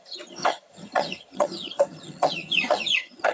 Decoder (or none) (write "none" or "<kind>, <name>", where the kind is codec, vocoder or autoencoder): vocoder, HiFi-GAN